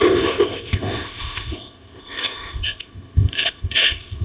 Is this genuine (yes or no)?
no